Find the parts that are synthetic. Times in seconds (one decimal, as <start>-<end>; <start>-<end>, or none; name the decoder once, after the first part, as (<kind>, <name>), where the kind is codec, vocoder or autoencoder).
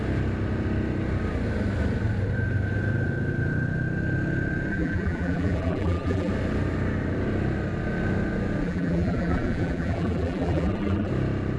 4.7-6.3 (vocoder, BigVGAN v2); 8.6-11.1